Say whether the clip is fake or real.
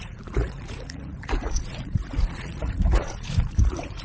fake